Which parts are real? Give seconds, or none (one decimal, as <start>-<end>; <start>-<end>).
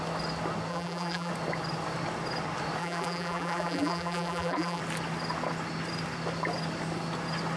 0.0-0.7; 1.3-2.8; 4.8-7.6